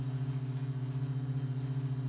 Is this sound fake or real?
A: real